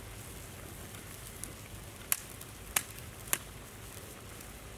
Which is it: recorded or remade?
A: recorded